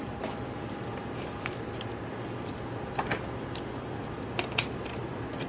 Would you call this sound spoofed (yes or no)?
no